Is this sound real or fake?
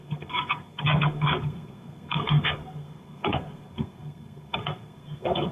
fake